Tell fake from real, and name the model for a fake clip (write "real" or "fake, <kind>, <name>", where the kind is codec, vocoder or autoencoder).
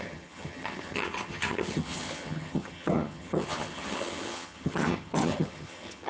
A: fake, vocoder, HiFi-GAN